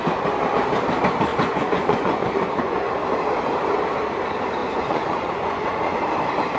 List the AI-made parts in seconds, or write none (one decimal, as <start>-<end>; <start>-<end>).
1.3-2.9; 4.6-6.0